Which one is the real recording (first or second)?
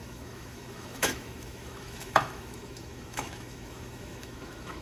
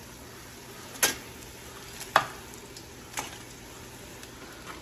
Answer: second